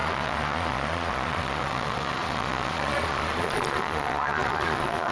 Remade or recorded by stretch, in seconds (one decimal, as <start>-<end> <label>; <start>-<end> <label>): 0.0-5.1 remade